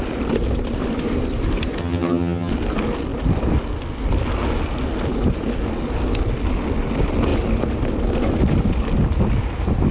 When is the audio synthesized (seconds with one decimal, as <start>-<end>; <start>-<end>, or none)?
1.8-2.5